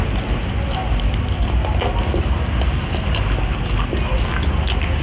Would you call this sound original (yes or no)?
yes